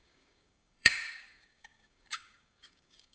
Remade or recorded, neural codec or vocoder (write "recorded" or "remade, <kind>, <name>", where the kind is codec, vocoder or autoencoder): remade, codec, DAC